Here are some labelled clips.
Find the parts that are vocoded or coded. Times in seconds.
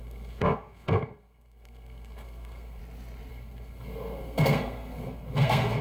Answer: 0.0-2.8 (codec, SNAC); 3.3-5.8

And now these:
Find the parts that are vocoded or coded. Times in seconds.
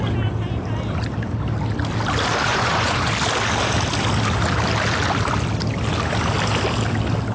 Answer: 2.5-3.1 (vocoder, Vocos)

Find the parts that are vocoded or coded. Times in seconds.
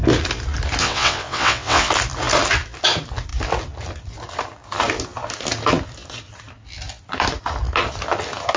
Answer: 0.8-1.9 (vocoder, WaveNeXt)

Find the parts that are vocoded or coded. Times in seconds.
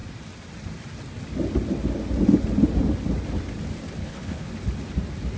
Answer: 4.0-4.5 (codec, HILCodec)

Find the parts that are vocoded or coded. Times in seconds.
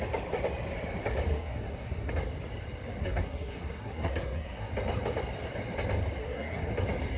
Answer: 1.3-2.1 (codec, SNAC); 3.0-4.7; 6.2-6.7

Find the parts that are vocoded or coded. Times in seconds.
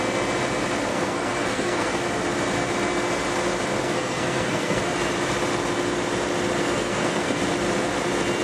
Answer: 0.9-2.0 (codec, SNAC); 3.8-4.8; 6.6-7.4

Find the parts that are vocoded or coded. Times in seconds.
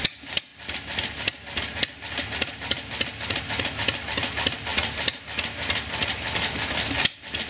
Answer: none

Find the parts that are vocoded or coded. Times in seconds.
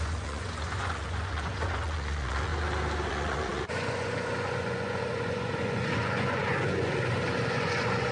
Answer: 0.0-2.5 (vocoder, Vocos); 3.1-8.1